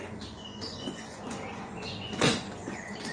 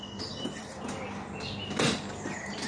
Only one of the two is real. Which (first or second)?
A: second